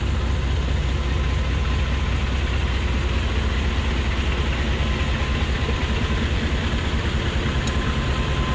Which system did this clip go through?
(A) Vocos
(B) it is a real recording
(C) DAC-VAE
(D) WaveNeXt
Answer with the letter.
B